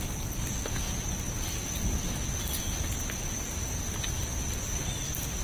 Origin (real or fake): real